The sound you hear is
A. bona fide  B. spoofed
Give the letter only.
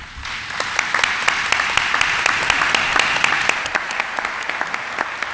A